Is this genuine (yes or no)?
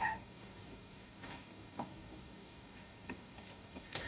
no